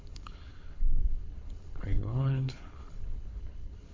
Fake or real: fake